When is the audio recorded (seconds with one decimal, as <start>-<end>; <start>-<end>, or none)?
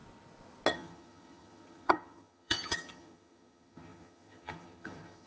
0.0-0.7